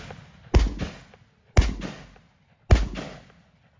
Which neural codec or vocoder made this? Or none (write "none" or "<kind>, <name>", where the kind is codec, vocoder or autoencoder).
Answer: none